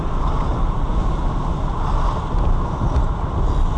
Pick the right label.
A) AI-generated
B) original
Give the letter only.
B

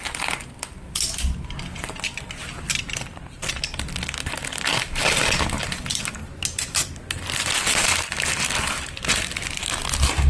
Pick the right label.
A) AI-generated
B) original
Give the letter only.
B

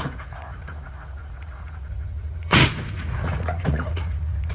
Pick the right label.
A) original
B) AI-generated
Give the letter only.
B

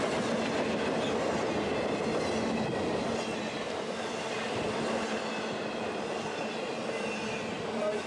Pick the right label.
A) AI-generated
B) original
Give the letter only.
B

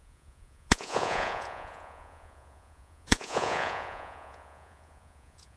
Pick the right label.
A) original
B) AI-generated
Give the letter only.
B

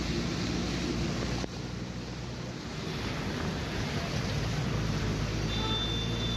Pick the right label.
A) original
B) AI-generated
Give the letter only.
A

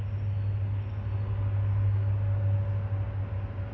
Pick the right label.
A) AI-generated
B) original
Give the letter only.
B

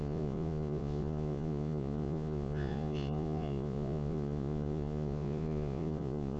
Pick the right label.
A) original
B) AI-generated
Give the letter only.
B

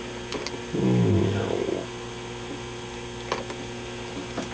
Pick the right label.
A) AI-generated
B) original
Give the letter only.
B